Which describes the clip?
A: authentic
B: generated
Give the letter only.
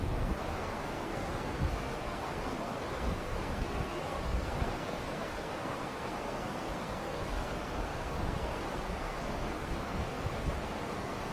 B